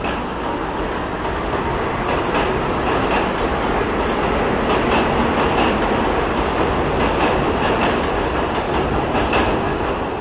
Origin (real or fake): real